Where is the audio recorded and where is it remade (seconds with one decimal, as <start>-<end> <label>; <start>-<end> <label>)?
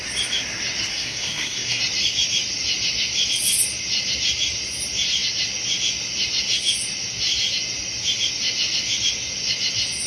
0.0-0.9 recorded; 0.9-1.8 remade; 1.8-10.1 recorded